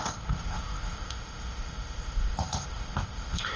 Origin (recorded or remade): remade